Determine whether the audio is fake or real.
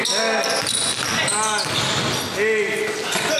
real